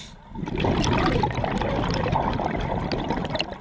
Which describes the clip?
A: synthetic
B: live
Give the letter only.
B